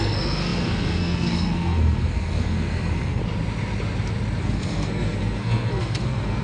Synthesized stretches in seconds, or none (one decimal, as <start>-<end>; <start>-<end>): 0.0-3.2; 4.4-6.4